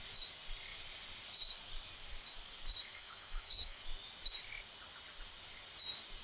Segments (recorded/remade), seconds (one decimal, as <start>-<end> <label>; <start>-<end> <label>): 0.0-2.9 recorded; 2.9-3.8 remade; 3.8-6.2 recorded

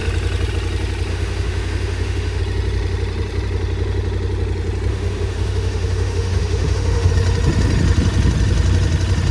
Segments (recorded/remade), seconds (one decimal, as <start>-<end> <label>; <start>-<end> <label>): 0.0-1.1 recorded; 1.1-2.4 remade; 2.4-4.9 recorded; 4.9-7.1 remade; 7.1-9.3 recorded

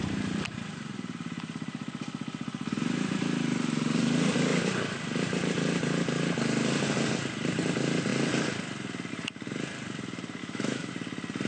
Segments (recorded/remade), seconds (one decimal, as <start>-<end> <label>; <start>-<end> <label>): 0.0-10.4 recorded; 10.4-10.9 remade; 10.9-11.5 recorded